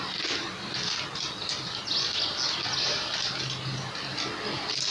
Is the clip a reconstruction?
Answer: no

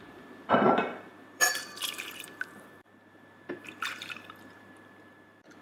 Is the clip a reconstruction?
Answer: yes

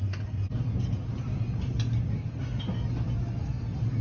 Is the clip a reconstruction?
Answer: no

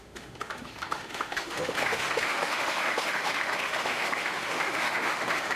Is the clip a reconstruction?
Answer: yes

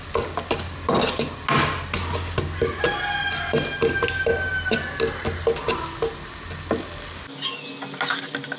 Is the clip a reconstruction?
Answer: no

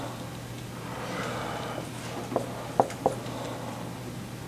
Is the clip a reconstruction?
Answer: no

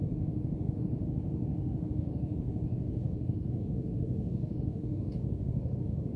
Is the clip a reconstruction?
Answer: yes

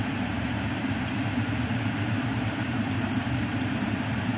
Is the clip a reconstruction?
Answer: yes